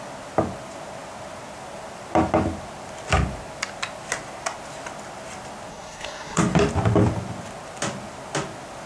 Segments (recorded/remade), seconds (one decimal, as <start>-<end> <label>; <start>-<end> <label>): 0.0-5.7 recorded; 5.7-6.4 remade; 6.4-8.9 recorded